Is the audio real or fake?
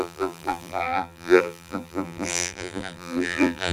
fake